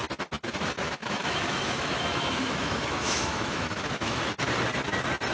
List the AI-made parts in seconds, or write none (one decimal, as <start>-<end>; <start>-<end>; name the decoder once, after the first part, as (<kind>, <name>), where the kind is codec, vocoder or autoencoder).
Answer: 1.0-4.2 (autoencoder, DAC-VAE)